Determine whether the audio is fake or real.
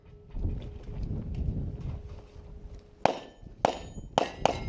real